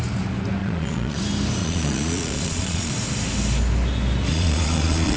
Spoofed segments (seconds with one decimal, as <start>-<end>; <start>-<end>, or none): 0.6-1.2; 1.6-2.9; 4.3-5.2